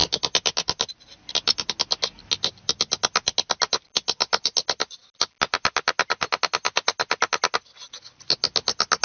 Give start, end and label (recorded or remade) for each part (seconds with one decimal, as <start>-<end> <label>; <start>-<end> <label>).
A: 0.0-9.0 recorded